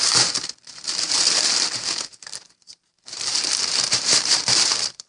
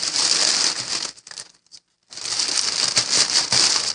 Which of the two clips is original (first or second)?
second